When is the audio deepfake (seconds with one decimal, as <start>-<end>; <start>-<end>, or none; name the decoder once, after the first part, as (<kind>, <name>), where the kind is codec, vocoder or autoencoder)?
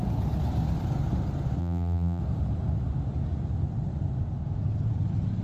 1.6-2.2 (vocoder, BigVGAN v2)